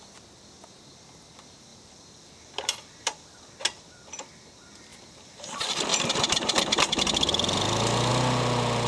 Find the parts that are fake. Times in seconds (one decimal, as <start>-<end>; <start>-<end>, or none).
1.7-3.5; 5.9-8.1